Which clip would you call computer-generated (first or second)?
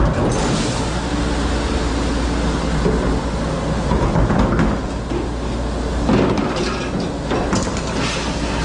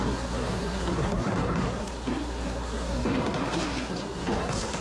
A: second